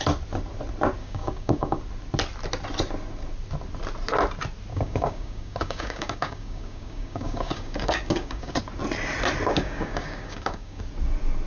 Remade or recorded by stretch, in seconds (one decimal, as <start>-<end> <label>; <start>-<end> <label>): 0.0-1.0 recorded; 1.0-1.8 remade; 1.8-4.7 recorded; 4.7-8.6 remade; 8.6-9.5 recorded; 9.5-10.8 remade; 10.8-11.5 recorded